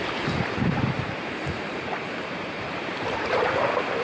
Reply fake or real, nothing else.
fake